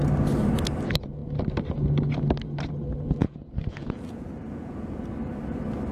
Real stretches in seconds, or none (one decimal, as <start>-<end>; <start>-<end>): 0.0-3.2; 5.0-5.9